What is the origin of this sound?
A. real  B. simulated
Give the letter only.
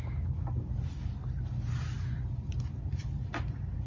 A